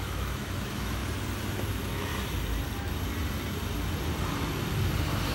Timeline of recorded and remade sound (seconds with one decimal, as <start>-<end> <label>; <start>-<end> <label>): 0.0-1.0 remade; 1.0-1.7 recorded; 1.7-2.1 remade; 2.1-5.3 recorded